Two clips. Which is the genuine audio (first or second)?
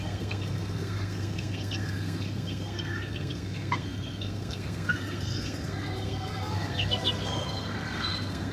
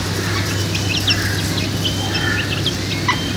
second